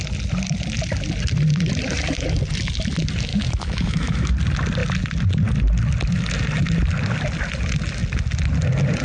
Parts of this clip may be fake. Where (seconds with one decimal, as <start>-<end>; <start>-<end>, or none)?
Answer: 3.3-4.3